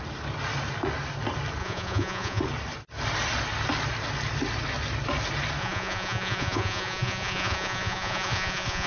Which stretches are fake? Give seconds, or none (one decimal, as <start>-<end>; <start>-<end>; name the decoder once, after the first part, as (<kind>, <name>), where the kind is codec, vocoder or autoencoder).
1.6-2.4 (vocoder, Vocos); 5.6-8.9